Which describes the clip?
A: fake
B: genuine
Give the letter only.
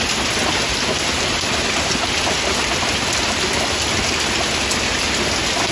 B